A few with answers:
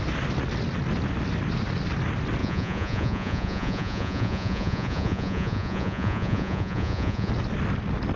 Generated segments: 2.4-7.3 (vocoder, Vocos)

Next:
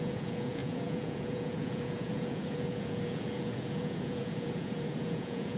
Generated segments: 0.0-5.6 (vocoder, Vocos)

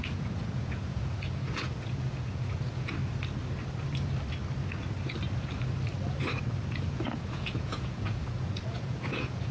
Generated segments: 0.0-3.0 (vocoder, Vocos); 6.9-9.5

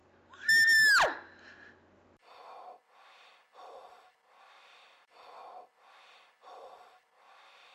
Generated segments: none

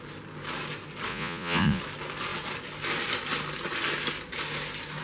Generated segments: 1.1-1.8 (vocoder, Vocos)

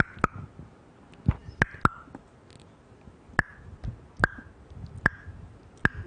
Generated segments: none

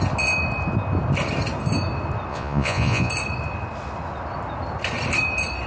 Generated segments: 2.3-3.1 (vocoder, Vocos)